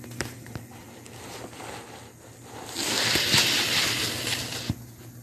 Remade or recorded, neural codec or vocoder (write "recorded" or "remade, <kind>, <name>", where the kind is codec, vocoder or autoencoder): recorded